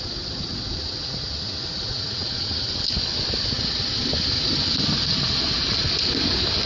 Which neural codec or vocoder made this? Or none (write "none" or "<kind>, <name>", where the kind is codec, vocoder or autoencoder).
none